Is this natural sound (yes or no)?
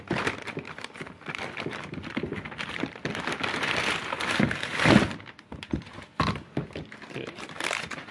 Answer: yes